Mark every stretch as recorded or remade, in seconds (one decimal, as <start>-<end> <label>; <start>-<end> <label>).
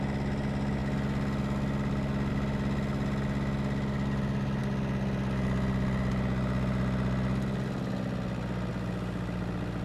0.0-9.8 recorded